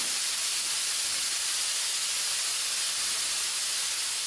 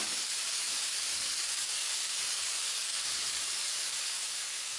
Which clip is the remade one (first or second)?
second